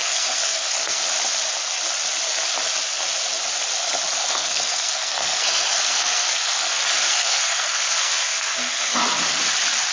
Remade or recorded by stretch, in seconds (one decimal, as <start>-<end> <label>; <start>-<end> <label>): 0.0-1.0 remade; 1.0-4.1 recorded; 4.1-6.6 remade; 6.6-7.0 recorded; 7.0-9.0 remade; 9.0-9.9 recorded